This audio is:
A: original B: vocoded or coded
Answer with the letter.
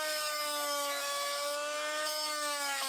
B